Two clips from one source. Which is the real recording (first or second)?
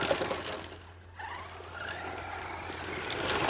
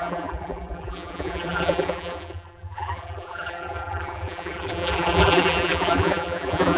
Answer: first